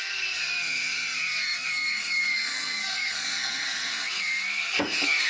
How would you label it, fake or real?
fake